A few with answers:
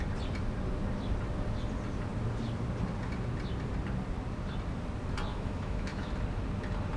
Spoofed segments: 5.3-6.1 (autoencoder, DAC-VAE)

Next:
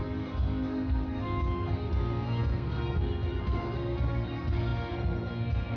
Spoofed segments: 0.0-5.8 (codec, SNAC)

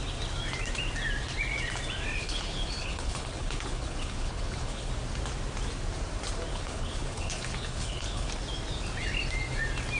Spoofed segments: 2.2-4.9 (codec, HILCodec); 6.5-8.3

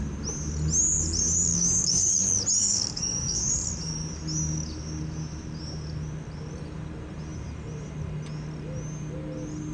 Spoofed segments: 1.5-2.1 (codec, DAC); 2.6-3.5